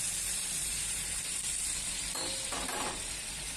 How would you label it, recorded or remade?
remade